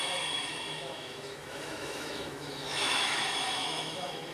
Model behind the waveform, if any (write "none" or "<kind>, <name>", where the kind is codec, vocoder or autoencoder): autoencoder, DAC-VAE